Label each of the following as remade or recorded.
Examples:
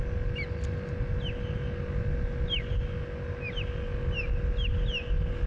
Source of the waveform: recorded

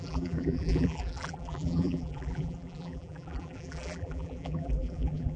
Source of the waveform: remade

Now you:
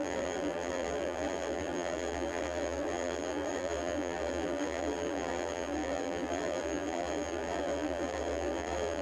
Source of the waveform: remade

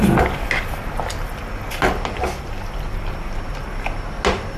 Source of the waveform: recorded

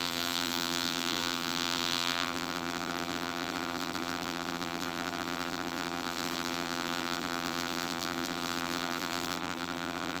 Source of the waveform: remade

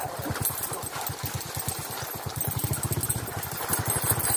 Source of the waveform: recorded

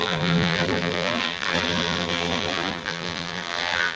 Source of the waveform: remade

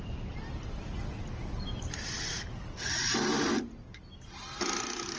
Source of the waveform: recorded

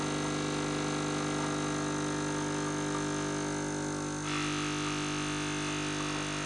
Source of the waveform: recorded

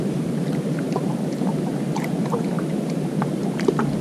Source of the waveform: remade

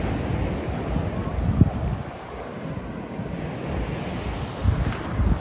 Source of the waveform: recorded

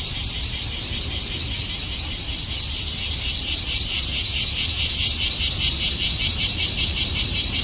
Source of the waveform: remade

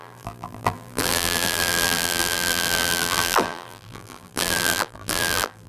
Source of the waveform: remade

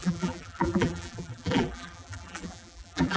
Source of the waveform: remade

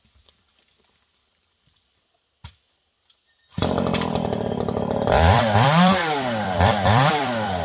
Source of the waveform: remade